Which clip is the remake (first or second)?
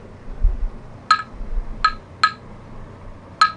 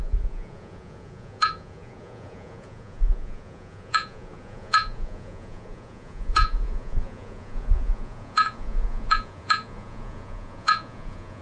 second